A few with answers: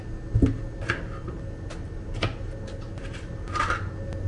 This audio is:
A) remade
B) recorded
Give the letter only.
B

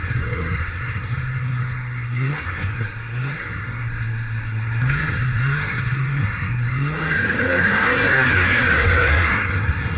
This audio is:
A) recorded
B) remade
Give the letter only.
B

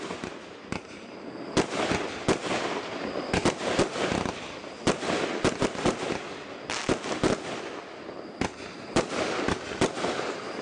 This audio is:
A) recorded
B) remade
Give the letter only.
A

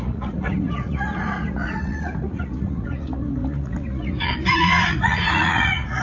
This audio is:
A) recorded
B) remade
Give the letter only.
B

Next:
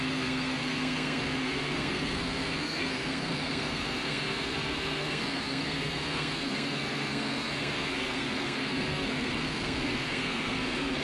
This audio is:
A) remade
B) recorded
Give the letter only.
A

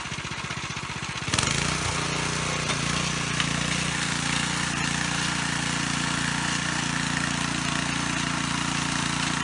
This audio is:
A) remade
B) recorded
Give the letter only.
B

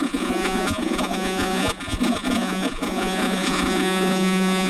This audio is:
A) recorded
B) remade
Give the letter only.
B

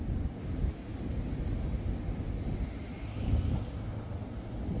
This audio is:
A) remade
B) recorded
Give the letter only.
B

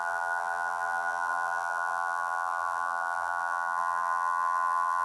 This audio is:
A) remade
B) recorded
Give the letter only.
A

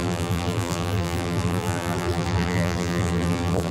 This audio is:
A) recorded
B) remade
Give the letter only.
B